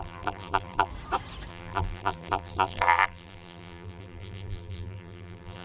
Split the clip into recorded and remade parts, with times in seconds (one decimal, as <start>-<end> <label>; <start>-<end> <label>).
0.0-0.9 remade; 0.9-1.5 recorded; 1.5-5.6 remade